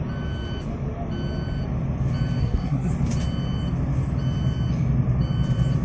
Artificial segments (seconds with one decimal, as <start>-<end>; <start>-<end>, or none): 2.4-2.9